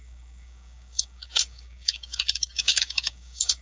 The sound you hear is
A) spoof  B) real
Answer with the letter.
A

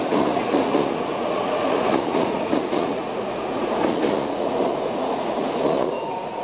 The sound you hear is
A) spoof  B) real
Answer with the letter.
A